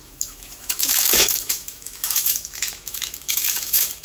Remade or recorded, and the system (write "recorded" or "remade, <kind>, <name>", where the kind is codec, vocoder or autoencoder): remade, autoencoder, DAC-VAE